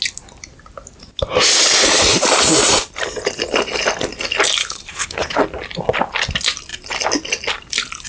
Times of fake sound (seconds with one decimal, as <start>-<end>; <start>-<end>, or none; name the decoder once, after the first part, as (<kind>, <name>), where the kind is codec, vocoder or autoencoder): 4.6-5.4 (codec, HILCodec)